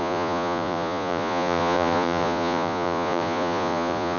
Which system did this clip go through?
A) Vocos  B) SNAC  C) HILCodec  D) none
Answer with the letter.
A